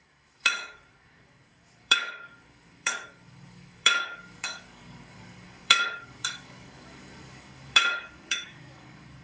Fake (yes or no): yes